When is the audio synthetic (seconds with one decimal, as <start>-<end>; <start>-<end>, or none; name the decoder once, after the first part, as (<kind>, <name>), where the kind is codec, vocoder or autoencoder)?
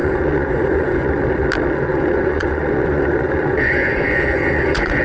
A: 0.0-1.1 (vocoder, Vocos); 1.9-5.0